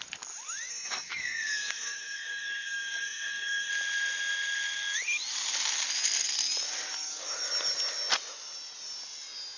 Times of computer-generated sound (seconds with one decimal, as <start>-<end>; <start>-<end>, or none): 0.7-3.7